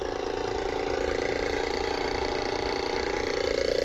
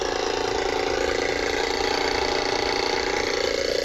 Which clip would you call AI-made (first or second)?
first